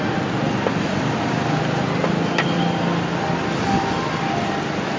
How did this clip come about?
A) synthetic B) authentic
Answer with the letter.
B